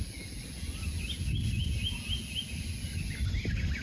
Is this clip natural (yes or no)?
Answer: yes